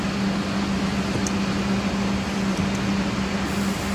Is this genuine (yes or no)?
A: yes